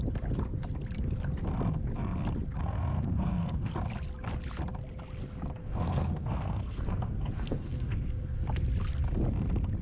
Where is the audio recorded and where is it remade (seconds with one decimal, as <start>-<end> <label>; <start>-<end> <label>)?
0.0-2.6 recorded; 2.6-3.7 remade; 3.7-5.6 recorded; 5.6-8.4 remade; 8.4-9.8 recorded